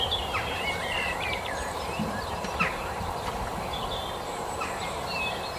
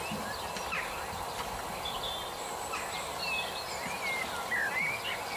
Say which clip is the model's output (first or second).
first